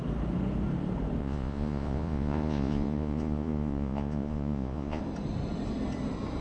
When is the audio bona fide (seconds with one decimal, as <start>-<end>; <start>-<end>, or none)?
0.0-1.2; 5.0-6.4